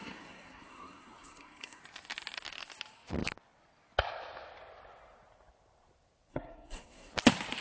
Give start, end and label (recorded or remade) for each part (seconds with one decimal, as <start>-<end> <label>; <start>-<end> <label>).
0.0-1.8 remade; 1.8-6.3 recorded; 6.3-7.1 remade; 7.1-7.6 recorded